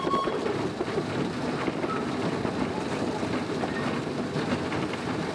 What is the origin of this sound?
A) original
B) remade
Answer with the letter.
A